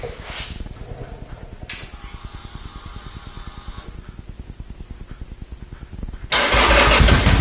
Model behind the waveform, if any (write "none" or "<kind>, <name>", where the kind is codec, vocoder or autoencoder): none